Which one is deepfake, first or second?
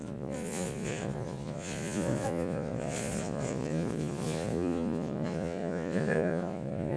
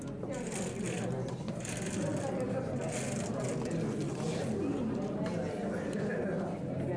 first